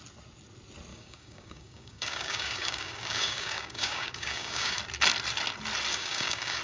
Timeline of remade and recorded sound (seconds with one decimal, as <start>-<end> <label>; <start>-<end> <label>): 0.0-0.9 recorded; 0.9-4.8 remade; 4.8-5.9 recorded; 5.9-6.6 remade